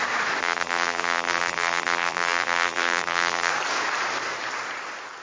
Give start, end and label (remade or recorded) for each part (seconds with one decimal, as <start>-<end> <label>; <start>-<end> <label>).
0.0-0.4 recorded; 0.4-3.5 remade; 3.5-5.2 recorded